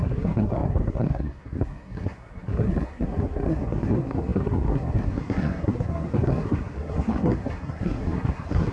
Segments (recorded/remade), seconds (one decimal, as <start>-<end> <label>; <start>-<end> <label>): 0.0-8.7 remade